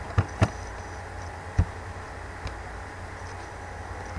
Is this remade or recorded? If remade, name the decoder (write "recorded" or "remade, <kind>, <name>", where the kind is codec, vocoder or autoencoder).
recorded